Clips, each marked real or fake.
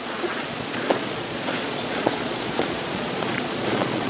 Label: fake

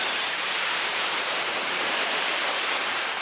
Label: fake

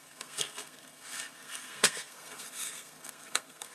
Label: fake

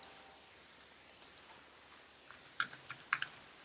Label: real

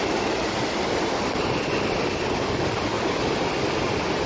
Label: real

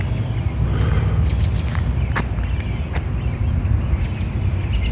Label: real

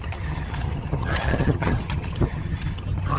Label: fake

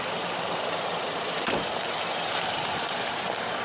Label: fake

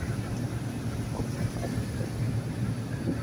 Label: fake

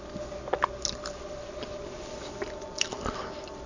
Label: real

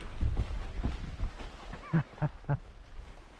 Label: real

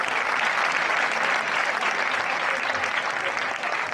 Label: real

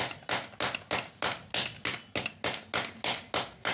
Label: real